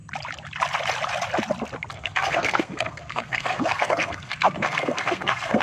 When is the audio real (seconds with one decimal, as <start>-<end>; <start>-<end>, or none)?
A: 0.0-1.9